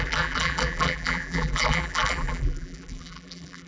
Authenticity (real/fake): fake